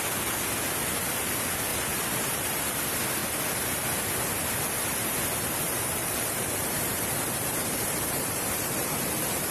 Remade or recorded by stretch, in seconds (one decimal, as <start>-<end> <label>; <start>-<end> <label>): 0.0-1.7 recorded; 1.7-2.8 remade; 2.8-6.0 recorded; 6.0-9.5 remade